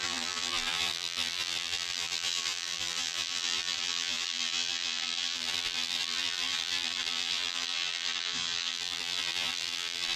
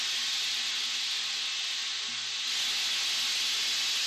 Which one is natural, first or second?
second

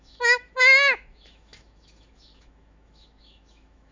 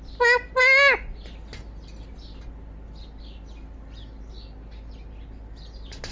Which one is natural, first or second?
second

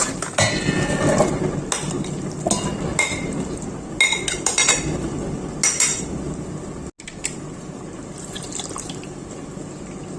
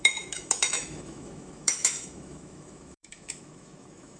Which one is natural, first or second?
first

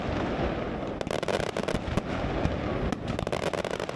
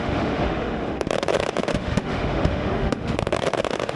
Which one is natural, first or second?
first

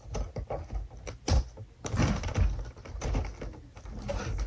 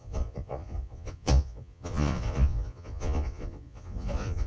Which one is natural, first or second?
first